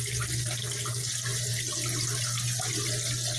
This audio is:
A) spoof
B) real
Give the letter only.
B